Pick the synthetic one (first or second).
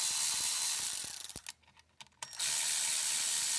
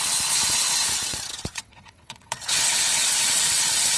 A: second